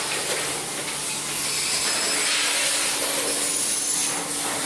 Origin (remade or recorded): recorded